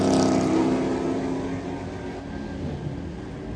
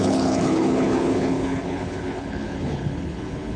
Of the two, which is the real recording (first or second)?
first